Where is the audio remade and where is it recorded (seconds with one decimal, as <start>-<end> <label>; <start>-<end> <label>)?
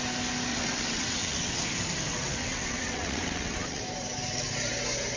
0.0-0.5 recorded; 0.5-1.6 remade; 1.6-2.1 recorded; 2.1-3.8 remade; 3.8-5.2 recorded